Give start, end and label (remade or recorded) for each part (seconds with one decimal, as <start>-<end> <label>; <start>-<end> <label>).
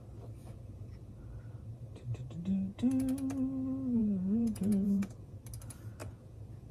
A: 0.0-0.4 recorded; 0.4-1.1 remade; 1.1-4.0 recorded; 4.0-5.4 remade; 5.4-6.0 recorded; 6.0-6.7 remade